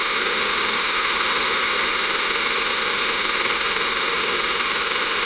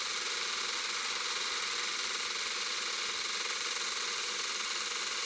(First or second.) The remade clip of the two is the first